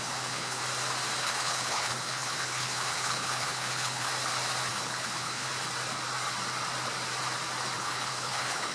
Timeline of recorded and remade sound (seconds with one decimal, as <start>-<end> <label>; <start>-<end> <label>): 0.0-0.6 remade; 0.6-1.2 recorded; 1.2-4.1 remade; 4.1-4.7 recorded; 4.7-5.5 remade; 5.5-7.8 recorded; 7.8-8.7 remade